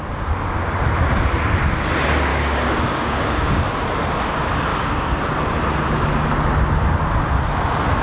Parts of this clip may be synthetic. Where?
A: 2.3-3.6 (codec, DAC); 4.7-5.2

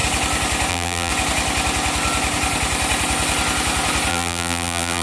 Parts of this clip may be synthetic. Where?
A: 0.7-1.1 (vocoder, BigVGAN v2); 4.1-5.0

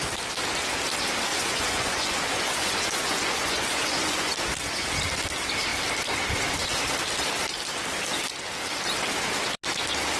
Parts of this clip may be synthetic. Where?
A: 1.3-4.3 (vocoder, Vocos)

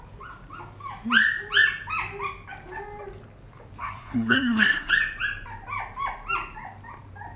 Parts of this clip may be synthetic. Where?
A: 3.8-4.9 (codec, SNAC)

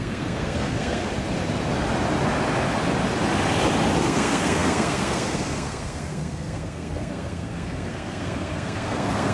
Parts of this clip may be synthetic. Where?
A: 0.0-1.1 (codec, SNAC); 4.0-9.3

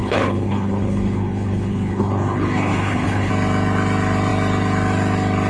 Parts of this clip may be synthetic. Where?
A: 0.0-3.3 (codec, HILCodec)